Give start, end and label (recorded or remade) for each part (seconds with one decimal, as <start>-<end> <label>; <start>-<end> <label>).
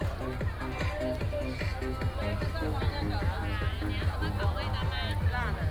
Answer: 0.0-5.7 recorded